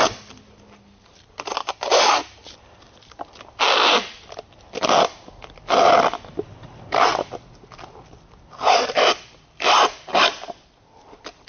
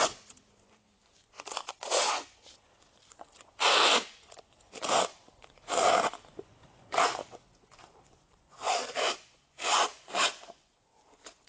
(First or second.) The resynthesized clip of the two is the second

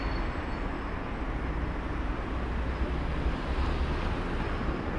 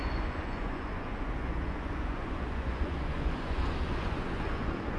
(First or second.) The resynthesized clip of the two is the second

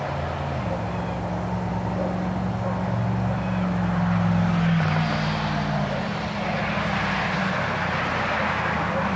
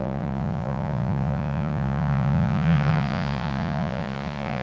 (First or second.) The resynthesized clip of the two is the second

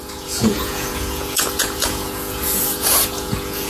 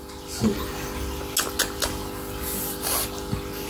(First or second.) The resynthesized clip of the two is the first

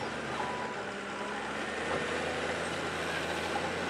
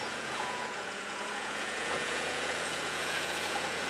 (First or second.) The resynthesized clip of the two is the second